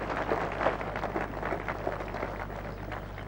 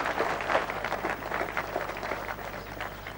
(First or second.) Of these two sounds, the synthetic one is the second